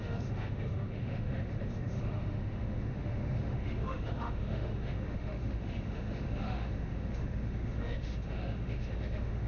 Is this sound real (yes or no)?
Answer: no